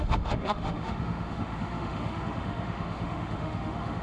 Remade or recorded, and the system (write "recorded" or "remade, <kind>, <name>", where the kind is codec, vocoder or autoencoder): remade, autoencoder, DAC-VAE